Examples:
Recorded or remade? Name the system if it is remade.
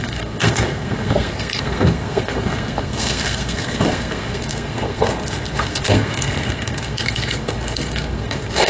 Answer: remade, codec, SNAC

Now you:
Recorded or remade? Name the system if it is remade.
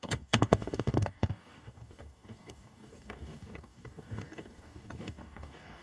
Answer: remade, codec, DAC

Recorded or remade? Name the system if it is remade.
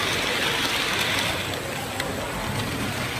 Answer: recorded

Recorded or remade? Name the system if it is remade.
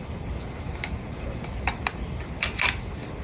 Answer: recorded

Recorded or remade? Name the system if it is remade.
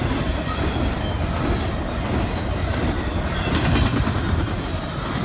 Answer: remade, vocoder, BigVGAN v2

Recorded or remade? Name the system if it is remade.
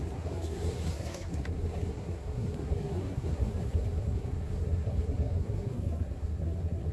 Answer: remade, codec, SNAC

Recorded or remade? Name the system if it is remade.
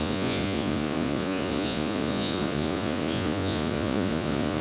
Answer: remade, vocoder, Vocos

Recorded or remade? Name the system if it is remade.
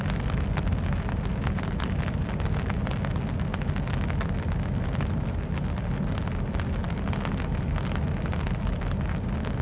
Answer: recorded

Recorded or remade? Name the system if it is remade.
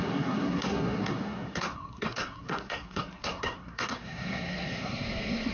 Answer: remade, codec, SNAC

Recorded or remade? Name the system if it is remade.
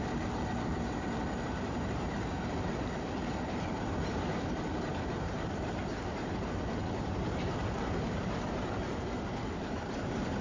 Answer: remade, vocoder, BigVGAN v2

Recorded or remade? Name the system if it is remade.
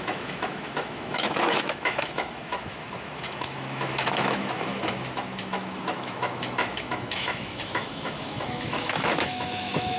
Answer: remade, autoencoder, DAC-VAE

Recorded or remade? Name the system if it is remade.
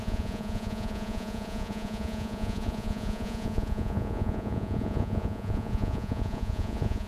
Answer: remade, vocoder, Vocos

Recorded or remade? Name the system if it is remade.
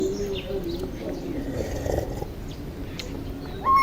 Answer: recorded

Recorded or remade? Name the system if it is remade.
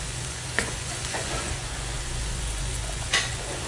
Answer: remade, vocoder, Vocos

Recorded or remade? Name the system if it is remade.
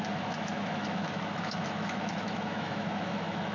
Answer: remade, autoencoder, DAC-VAE